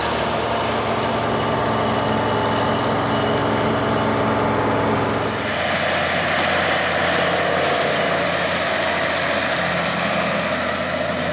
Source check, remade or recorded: recorded